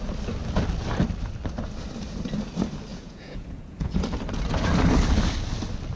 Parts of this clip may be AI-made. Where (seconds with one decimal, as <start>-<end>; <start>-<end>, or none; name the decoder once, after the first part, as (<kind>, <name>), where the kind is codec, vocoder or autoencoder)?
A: 2.9-4.0 (vocoder, Vocos)